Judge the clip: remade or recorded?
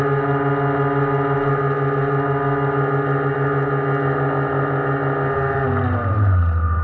recorded